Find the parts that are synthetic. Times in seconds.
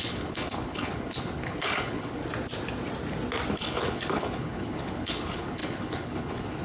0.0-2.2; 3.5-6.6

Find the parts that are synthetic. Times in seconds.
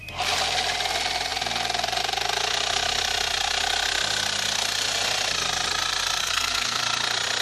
6.2-6.8